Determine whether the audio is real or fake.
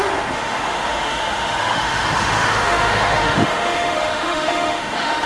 fake